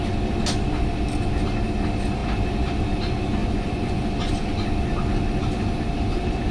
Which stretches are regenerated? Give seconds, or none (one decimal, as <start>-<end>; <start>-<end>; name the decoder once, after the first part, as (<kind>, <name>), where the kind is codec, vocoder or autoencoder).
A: 3.4-4.0 (vocoder, Vocos)